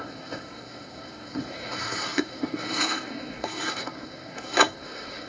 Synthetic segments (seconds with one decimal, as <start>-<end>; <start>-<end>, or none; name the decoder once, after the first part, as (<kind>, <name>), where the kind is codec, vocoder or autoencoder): 0.0-5.3 (codec, SNAC)